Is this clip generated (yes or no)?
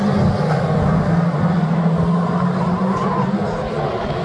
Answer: no